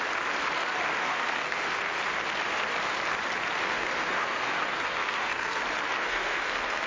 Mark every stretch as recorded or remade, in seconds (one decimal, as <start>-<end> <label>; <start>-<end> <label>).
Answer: 0.0-1.0 recorded; 1.0-1.9 remade; 1.9-3.6 recorded; 3.6-5.6 remade; 5.6-6.0 recorded; 6.0-6.9 remade